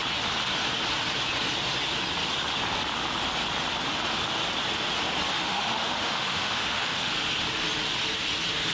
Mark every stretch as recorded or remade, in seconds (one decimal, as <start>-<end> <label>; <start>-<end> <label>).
0.0-5.3 recorded; 5.3-7.1 remade; 7.1-8.7 recorded